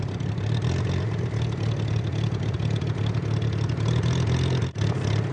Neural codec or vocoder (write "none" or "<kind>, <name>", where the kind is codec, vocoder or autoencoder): none